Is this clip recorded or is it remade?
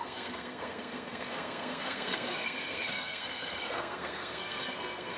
remade